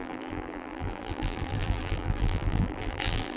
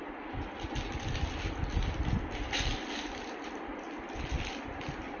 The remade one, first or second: first